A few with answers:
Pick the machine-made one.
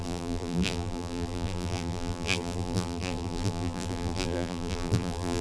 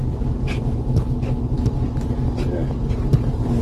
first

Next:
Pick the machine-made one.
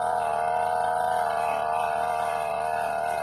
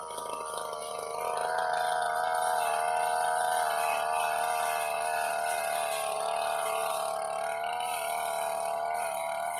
first